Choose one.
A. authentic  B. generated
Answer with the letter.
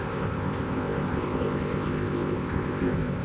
B